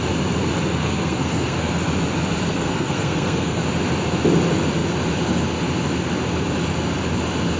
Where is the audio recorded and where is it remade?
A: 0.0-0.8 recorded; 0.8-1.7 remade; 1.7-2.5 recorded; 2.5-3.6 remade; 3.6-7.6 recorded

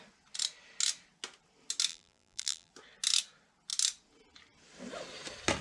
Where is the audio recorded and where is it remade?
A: 0.0-1.9 recorded; 1.9-2.7 remade; 2.7-5.6 recorded

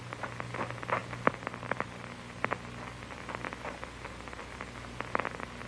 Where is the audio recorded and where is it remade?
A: 0.0-5.7 recorded

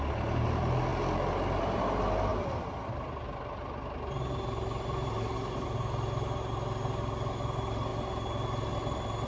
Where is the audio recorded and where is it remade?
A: 0.0-9.3 recorded

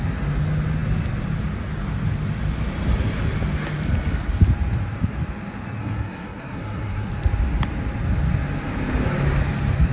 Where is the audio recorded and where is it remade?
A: 0.0-5.8 recorded; 5.8-7.1 remade; 7.1-9.9 recorded